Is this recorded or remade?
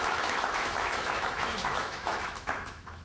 remade